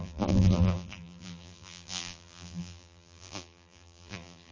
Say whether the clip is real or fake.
fake